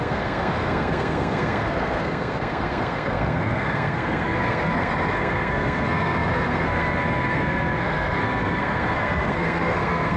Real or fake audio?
fake